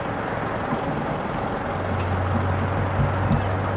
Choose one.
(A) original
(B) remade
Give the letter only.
A